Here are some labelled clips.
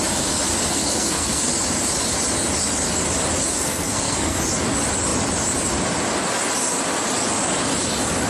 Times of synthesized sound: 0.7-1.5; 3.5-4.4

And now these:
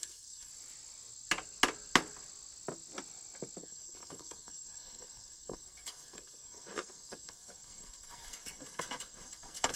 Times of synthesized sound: 0.0-0.5; 3.6-9.8

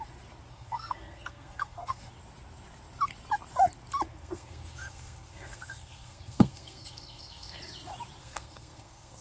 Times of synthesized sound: 0.5-2.1; 4.1-7.6; 8.2-9.2

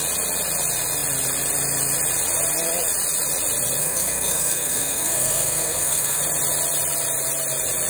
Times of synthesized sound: 3.8-6.2

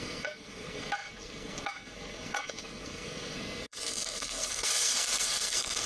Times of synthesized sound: 0.0-5.9